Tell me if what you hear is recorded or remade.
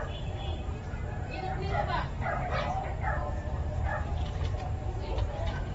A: remade